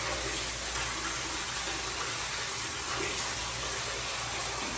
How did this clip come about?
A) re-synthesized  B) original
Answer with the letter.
B